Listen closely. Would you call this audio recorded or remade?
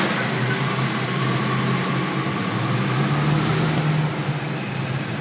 recorded